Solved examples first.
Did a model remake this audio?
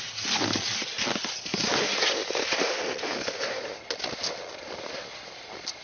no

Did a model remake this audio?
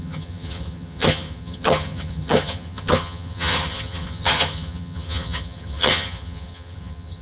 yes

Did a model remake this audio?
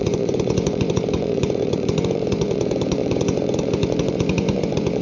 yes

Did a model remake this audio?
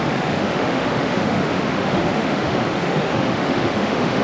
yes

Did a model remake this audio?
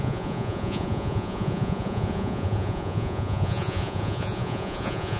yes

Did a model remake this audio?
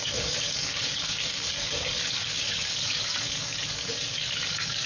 yes